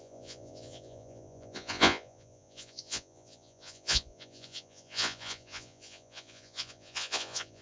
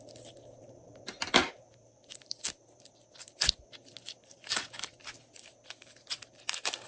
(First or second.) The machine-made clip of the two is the first